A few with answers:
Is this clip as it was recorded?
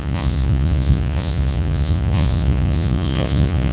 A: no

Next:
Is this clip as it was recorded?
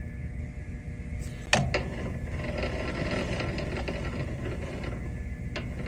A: yes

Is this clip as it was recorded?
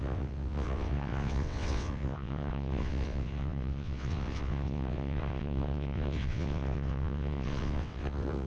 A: no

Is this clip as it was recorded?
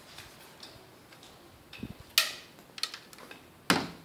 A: yes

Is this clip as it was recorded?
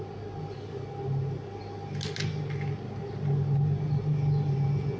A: yes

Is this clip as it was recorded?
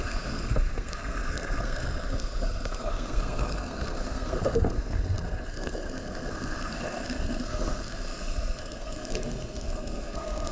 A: no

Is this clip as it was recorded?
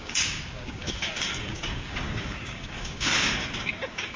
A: no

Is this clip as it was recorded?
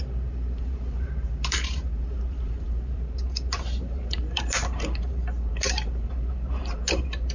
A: no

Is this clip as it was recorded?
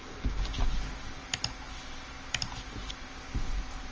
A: yes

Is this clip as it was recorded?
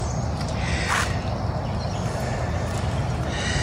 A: yes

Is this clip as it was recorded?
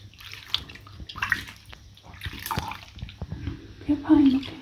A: yes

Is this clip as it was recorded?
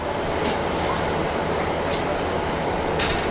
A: yes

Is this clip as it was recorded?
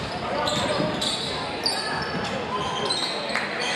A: yes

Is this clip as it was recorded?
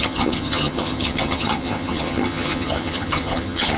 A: no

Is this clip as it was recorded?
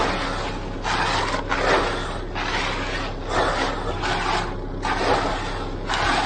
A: yes